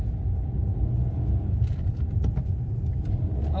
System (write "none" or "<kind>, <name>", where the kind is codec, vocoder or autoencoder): none